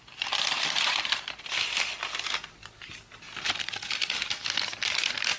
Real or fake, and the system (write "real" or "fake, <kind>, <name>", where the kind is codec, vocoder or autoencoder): fake, vocoder, BigVGAN v2